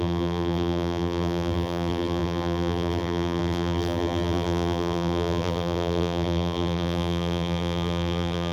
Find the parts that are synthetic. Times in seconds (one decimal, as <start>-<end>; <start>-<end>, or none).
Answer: 0.0-8.5

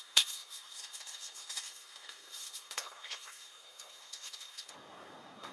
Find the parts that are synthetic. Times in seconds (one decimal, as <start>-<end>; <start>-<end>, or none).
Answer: 0.0-5.5

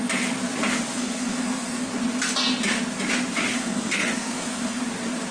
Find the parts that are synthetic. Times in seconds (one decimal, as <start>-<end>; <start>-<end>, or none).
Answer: 1.0-1.9; 3.5-4.8

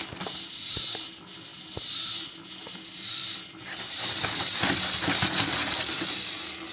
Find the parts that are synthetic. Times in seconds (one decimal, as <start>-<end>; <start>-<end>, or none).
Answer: none

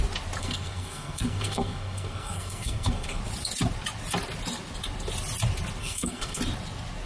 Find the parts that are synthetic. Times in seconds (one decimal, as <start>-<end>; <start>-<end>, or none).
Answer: 0.4-3.2; 5.8-6.4

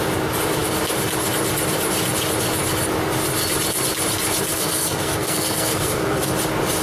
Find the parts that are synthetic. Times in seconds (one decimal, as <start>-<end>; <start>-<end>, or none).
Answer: 4.5-6.3

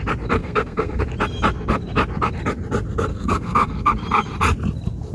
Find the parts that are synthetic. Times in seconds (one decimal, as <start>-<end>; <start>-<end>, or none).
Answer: 0.4-1.0; 3.1-3.9

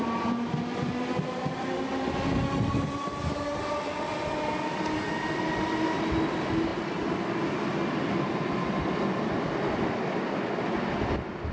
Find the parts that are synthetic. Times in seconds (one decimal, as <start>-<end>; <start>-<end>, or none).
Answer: none